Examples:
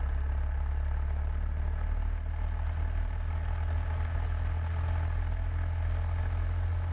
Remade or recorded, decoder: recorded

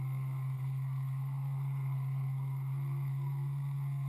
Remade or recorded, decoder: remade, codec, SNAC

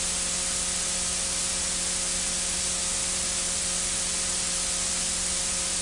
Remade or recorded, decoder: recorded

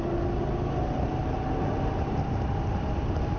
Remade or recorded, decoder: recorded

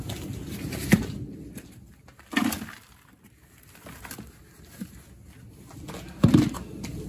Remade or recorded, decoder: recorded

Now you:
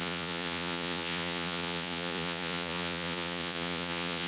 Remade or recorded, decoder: remade, vocoder, Vocos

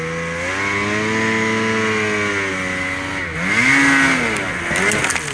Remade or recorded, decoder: recorded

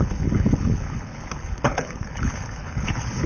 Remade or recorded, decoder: remade, codec, HILCodec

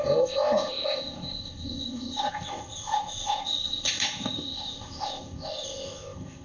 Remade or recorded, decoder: remade, codec, ZipCodec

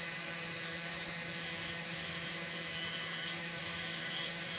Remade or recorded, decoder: remade, autoencoder, DAC-VAE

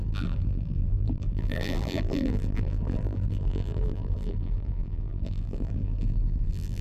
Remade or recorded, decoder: remade, vocoder, BigVGAN v2